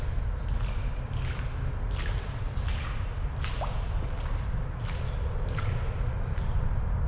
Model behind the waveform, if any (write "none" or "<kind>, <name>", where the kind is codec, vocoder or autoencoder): none